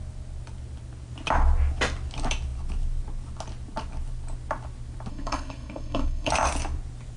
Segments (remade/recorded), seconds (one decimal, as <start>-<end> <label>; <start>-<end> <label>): 0.0-5.1 recorded; 5.1-6.3 remade; 6.3-7.2 recorded